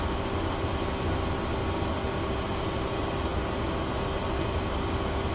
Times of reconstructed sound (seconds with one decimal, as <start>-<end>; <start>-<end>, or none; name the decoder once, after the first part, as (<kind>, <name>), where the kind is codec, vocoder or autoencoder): none